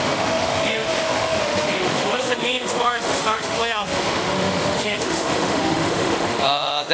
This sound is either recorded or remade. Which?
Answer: remade